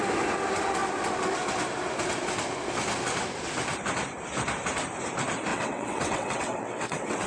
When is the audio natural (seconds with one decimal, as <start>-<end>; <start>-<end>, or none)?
0.0-5.5